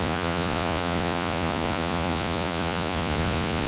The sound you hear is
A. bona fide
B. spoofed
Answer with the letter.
B